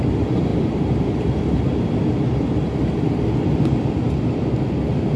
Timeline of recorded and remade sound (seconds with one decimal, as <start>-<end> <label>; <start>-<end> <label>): 0.0-5.2 recorded